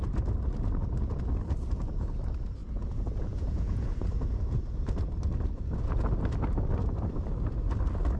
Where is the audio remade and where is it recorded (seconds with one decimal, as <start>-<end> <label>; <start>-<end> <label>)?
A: 0.0-2.6 recorded; 2.6-4.6 remade; 4.6-8.2 recorded